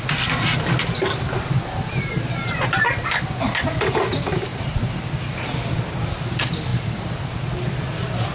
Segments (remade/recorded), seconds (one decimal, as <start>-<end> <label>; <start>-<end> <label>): 0.0-8.3 recorded